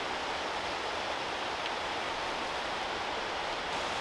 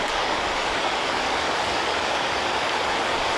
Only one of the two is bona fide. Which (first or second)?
first